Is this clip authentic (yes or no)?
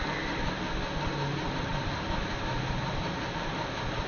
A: no